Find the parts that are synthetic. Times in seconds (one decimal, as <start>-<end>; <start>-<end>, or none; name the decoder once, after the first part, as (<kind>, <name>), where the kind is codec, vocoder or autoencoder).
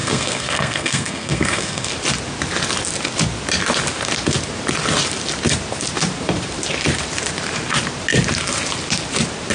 0.0-1.9 (codec, SNAC)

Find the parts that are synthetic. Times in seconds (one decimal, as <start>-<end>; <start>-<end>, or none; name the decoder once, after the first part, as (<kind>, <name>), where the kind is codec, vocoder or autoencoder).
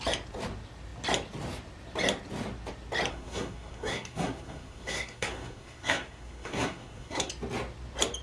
3.1-7.3 (codec, SNAC)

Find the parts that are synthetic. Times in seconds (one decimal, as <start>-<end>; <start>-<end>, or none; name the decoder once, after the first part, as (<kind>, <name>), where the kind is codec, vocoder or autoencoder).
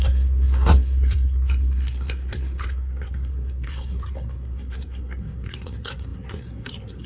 0.0-7.1 (codec, SNAC)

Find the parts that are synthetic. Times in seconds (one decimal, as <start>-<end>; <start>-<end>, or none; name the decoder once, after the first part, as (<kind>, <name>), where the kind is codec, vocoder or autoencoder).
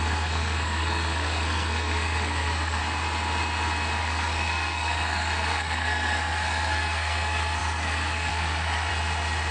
0.0-2.8 (codec, SNAC); 4.0-8.9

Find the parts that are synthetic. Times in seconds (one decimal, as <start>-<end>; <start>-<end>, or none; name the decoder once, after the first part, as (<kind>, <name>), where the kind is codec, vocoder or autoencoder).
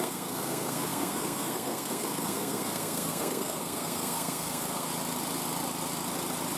0.0-4.9 (codec, SNAC)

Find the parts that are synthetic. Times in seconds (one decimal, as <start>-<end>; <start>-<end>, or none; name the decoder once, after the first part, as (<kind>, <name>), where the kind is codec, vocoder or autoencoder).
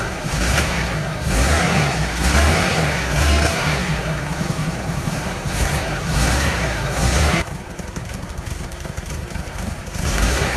0.0-10.6 (codec, SNAC)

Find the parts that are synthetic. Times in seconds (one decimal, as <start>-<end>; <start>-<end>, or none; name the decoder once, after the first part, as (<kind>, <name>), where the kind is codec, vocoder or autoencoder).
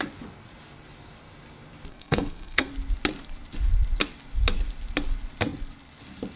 1.9-2.7 (codec, SNAC)